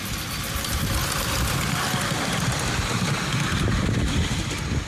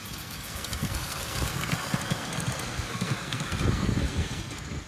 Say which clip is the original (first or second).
first